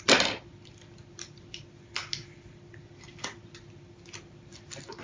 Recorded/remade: recorded